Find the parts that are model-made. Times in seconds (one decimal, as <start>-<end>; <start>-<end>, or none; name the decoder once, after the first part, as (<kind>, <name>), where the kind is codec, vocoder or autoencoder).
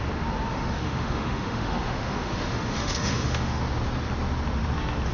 0.5-3.6 (autoencoder, DAC-VAE)